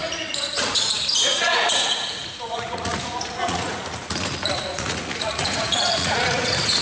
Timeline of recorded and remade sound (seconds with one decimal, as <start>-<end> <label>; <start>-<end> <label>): 0.0-6.8 remade